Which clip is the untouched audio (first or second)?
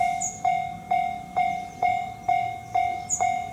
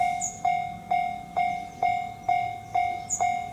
second